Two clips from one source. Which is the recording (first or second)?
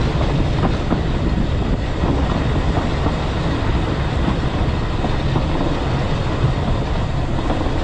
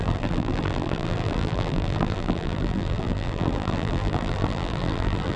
first